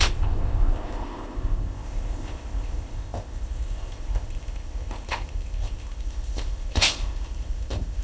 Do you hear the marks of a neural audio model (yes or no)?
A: yes